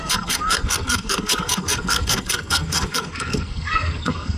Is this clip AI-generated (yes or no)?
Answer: yes